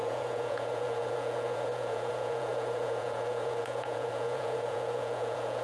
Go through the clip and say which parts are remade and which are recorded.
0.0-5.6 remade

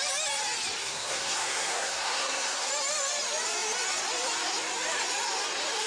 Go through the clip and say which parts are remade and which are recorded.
0.0-0.8 recorded; 0.8-2.7 remade; 2.7-5.9 recorded

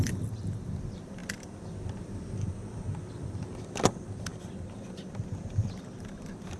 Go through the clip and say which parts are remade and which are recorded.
0.0-6.6 recorded